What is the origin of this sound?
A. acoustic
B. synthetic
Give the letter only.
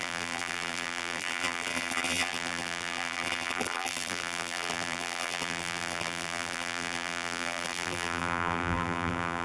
B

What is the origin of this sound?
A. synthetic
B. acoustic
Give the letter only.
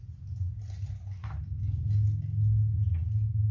B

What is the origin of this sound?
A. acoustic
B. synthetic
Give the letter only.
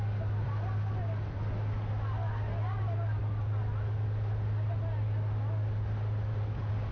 A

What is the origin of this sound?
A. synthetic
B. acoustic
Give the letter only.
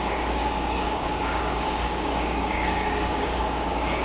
A